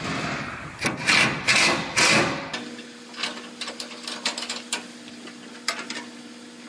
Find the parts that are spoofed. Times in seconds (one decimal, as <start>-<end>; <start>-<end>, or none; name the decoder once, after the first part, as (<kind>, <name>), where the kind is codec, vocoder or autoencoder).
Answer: none